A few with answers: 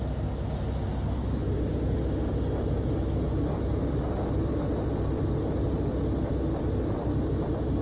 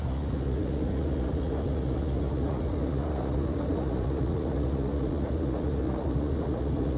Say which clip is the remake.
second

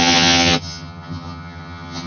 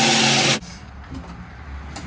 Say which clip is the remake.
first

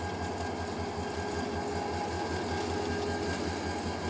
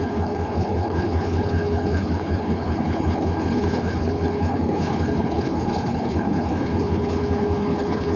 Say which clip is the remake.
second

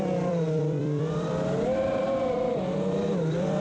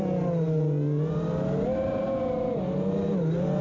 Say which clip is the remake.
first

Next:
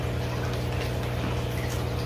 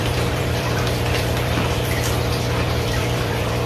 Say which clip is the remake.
second